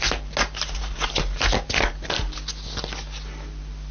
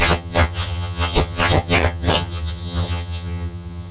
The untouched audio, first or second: first